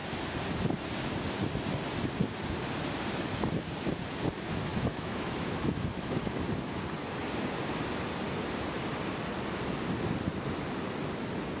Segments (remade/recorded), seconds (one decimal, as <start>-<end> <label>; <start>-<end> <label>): 0.0-4.7 recorded; 4.7-6.2 remade; 6.2-11.6 recorded